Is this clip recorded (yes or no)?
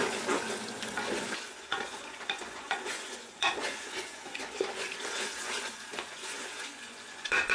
no